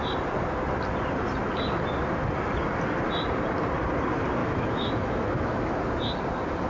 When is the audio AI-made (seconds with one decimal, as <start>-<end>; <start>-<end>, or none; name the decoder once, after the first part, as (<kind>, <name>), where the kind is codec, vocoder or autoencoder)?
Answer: 4.4-5.7 (autoencoder, DAC-VAE)